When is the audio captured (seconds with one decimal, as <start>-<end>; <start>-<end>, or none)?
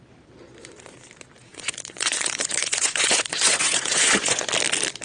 0.0-1.5; 4.5-5.0